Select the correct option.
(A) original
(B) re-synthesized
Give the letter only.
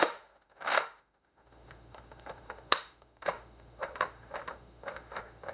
B